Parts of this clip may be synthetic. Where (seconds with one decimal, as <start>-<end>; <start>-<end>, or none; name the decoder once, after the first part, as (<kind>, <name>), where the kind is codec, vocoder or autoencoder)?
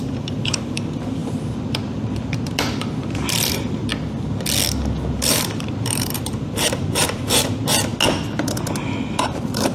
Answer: 0.0-3.9 (vocoder, BigVGAN v2); 5.1-7.9; 9.0-9.7